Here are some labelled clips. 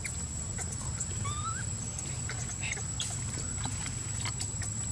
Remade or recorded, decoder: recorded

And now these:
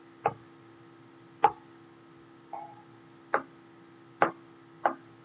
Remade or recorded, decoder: recorded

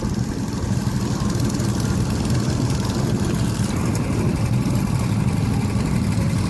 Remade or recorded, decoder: recorded